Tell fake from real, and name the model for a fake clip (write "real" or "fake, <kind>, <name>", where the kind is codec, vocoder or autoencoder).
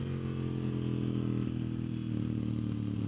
real